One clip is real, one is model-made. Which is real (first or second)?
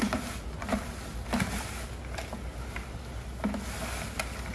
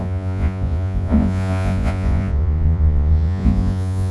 first